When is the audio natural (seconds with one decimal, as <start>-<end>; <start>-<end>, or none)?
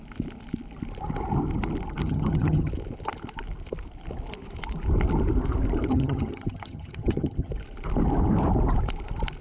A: 0.0-2.0; 2.7-5.9; 7.5-9.4